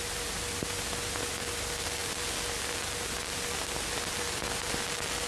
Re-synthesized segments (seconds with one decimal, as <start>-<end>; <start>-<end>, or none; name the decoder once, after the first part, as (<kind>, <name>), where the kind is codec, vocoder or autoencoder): none

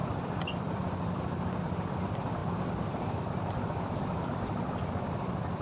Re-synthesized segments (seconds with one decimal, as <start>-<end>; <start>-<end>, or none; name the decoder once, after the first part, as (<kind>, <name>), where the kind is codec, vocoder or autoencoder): 0.5-5.6 (vocoder, BigVGAN v2)

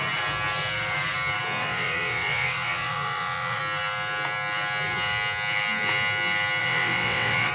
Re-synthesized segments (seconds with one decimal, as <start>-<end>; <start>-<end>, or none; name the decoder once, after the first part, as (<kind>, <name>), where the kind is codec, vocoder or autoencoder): 1.6-3.6 (vocoder, WaveNeXt); 6.6-7.5

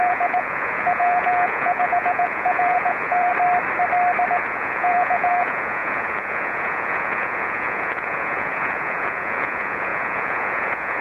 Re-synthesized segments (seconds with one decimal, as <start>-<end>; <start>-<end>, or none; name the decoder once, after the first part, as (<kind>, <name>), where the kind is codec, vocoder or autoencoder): 0.0-3.3 (vocoder, Vocos); 4.3-11.0